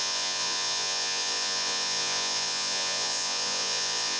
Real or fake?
fake